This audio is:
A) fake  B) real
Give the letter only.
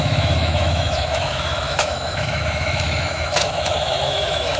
A